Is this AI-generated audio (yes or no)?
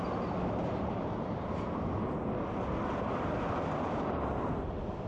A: no